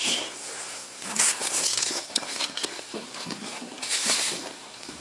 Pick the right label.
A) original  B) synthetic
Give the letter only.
B